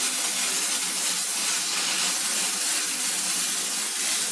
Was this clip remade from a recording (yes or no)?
no